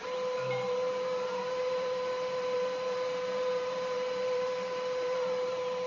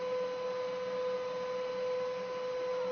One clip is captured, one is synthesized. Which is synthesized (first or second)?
first